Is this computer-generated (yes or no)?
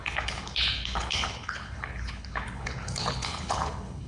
yes